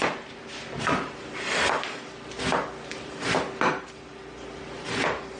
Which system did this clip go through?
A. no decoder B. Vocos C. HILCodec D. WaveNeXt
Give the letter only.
A